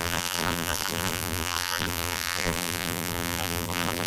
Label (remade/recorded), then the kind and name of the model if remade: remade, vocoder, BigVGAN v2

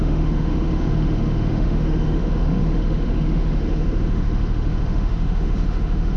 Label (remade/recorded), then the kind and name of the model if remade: remade, autoencoder, DAC-VAE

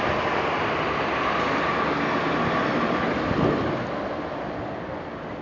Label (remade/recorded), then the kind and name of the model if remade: recorded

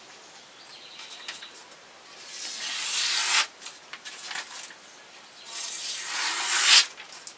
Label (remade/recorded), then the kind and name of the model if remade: recorded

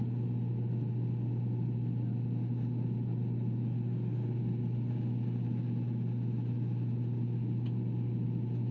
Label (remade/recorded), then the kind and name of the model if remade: recorded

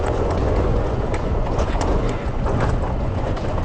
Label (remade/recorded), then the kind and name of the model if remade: remade, vocoder, Vocos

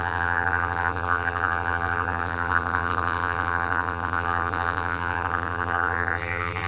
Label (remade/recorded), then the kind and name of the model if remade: remade, vocoder, BigVGAN v2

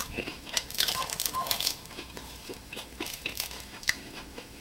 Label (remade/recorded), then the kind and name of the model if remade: remade, autoencoder, DAC-VAE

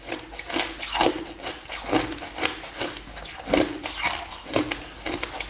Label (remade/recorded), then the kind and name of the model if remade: recorded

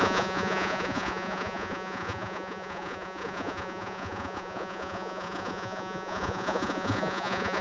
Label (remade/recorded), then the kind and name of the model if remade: remade, vocoder, Vocos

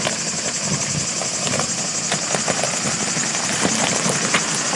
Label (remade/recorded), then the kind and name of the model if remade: recorded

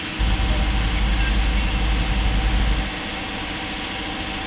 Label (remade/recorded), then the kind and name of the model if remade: recorded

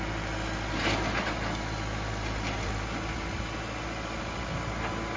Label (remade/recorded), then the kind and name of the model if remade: recorded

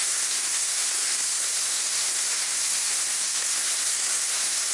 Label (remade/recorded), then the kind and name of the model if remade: remade, codec, SNAC